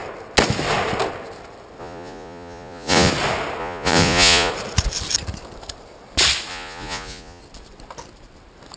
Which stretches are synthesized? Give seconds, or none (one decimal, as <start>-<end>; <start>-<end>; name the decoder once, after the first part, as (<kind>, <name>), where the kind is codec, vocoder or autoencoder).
1.8-3.1 (vocoder, Vocos); 3.6-4.5; 6.5-7.4